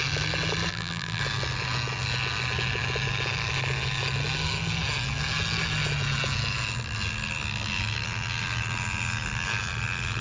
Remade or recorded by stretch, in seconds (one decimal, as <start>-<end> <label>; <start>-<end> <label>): 0.0-0.7 recorded; 0.7-1.2 remade; 1.2-10.2 recorded

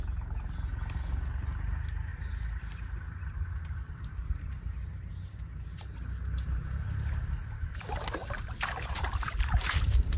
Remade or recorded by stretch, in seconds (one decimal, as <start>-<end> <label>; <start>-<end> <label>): 0.0-2.1 recorded; 2.1-7.2 remade; 7.2-8.2 recorded; 8.2-10.2 remade

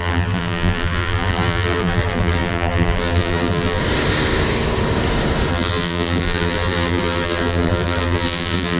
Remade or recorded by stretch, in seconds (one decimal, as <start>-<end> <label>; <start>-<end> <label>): 0.0-3.8 remade; 3.8-5.5 recorded; 5.5-8.8 remade

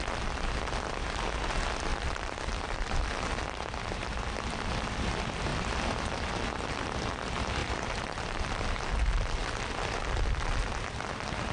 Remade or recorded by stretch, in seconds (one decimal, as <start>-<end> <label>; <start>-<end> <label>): 0.0-1.9 recorded; 1.9-4.2 remade; 4.2-5.5 recorded; 5.5-7.1 remade; 7.1-7.6 recorded; 7.6-8.4 remade; 8.4-11.5 recorded

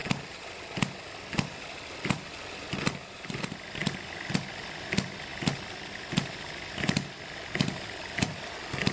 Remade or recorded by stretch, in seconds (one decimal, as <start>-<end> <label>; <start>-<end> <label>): 0.0-8.9 recorded

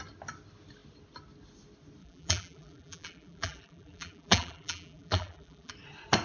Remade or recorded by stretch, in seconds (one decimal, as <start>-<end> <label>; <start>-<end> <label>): 0.0-2.0 recorded; 2.0-5.7 remade; 5.7-6.2 recorded